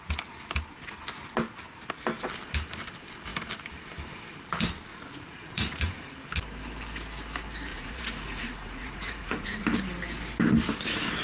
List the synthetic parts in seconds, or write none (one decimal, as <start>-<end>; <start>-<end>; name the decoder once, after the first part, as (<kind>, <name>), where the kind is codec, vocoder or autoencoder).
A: 4.9-6.1 (vocoder, Vocos); 7.7-9.6